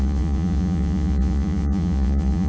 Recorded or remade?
remade